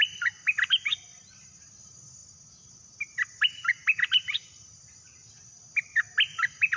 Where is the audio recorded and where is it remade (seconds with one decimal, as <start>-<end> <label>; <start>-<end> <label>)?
0.0-6.8 recorded